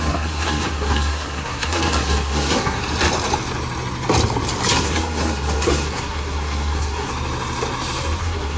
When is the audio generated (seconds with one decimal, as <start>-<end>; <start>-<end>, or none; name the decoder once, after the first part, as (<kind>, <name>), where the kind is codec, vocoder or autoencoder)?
0.0-2.8 (codec, SNAC); 4.7-7.1; 8.2-8.6